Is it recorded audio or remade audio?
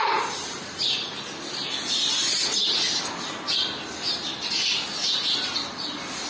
recorded